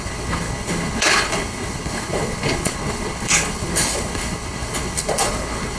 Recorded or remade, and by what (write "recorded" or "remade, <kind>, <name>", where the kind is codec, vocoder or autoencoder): remade, codec, HILCodec